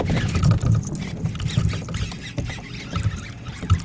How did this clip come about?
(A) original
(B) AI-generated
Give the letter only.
A